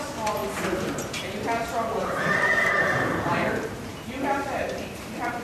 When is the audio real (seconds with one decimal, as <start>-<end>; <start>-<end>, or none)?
0.4-1.6; 3.9-4.6